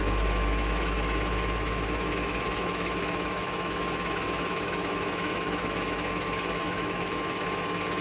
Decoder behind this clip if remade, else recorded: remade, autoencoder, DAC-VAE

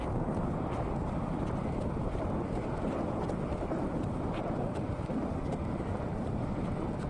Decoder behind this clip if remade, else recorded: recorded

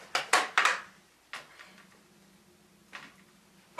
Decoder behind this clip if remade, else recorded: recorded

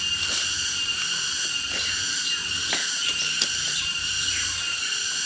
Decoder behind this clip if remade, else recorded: recorded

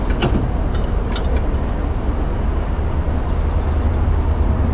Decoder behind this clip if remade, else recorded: recorded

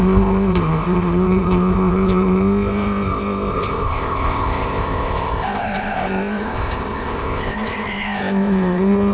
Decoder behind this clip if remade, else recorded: remade, codec, ZipCodec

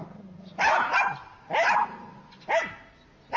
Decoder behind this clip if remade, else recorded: recorded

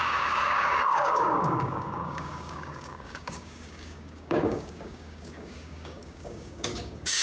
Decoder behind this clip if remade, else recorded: remade, codec, DAC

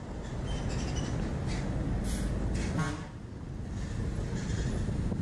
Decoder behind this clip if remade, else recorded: recorded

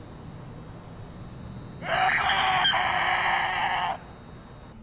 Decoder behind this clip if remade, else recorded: recorded